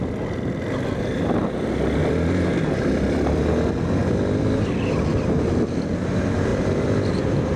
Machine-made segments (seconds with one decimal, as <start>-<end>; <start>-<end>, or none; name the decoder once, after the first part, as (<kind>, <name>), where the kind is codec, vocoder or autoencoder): 2.0-3.4 (vocoder, BigVGAN v2); 4.0-5.0; 6.5-7.1

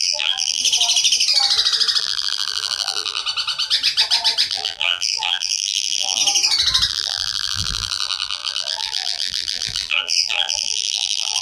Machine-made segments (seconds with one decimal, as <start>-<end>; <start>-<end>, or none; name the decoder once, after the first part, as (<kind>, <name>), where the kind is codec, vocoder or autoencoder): 0.0-0.6 (vocoder, BigVGAN v2); 2.0-3.2; 4.5-6.2; 6.9-11.4

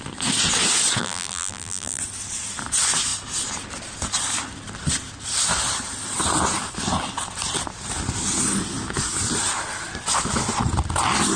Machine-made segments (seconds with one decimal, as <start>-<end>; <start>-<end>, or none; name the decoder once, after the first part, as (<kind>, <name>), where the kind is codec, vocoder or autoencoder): 1.0-2.0 (vocoder, BigVGAN v2)

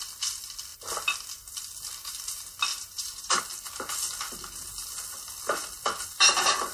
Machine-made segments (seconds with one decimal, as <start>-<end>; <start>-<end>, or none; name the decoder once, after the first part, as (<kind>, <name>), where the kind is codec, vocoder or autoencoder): 2.7-3.4 (vocoder, BigVGAN v2)

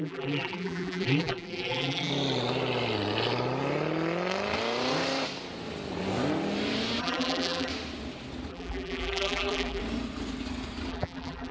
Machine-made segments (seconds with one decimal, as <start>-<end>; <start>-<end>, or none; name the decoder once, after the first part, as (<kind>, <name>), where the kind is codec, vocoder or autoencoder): 0.0-2.1 (vocoder, BigVGAN v2); 7.0-7.7; 8.5-9.8; 10.9-11.5

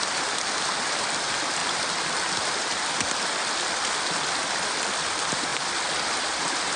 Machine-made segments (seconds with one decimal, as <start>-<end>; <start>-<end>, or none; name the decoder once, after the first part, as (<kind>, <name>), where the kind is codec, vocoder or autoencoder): 0.0-5.5 (vocoder, BigVGAN v2)